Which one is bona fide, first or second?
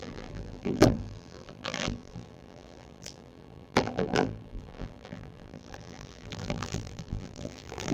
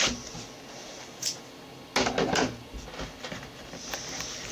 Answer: second